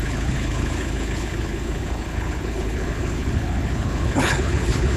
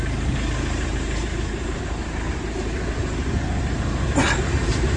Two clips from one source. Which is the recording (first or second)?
second